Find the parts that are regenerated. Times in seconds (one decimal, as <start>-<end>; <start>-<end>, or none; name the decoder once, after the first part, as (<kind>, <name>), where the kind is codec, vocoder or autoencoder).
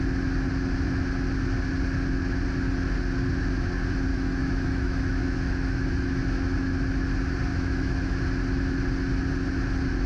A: 4.1-6.2 (autoencoder, DAC-VAE); 7.5-8.2